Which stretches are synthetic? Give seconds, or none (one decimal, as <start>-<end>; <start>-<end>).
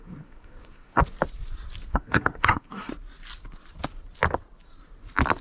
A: 0.0-1.0; 1.9-2.9